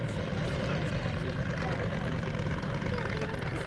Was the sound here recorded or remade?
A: remade